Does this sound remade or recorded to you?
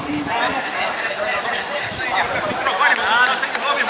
recorded